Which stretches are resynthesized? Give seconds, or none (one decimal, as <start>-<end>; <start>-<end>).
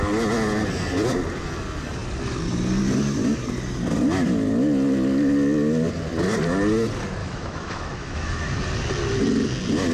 7.2-8.5